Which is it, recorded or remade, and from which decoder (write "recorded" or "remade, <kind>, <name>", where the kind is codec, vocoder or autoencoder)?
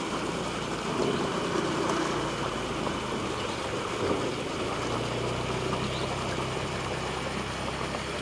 recorded